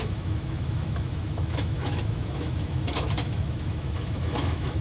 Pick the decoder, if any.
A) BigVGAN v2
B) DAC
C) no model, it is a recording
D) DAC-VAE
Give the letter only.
D